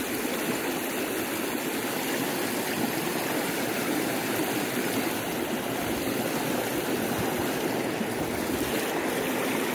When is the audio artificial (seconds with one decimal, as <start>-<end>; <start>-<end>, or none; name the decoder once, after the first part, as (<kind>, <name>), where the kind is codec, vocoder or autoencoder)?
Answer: none

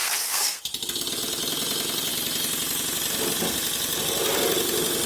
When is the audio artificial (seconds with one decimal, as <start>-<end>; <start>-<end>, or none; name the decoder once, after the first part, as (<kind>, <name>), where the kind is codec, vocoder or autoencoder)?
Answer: 0.0-0.6 (codec, SNAC)

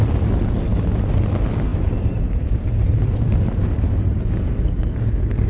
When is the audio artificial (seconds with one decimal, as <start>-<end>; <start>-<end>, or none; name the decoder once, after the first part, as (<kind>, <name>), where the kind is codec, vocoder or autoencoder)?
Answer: 0.7-1.2 (vocoder, BigVGAN v2); 1.7-4.2